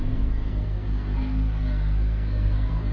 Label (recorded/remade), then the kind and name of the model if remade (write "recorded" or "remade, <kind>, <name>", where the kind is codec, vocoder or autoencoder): remade, codec, SNAC